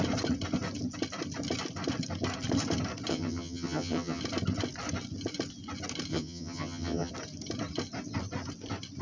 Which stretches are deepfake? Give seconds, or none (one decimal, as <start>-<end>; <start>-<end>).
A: 3.1-4.2; 6.1-7.1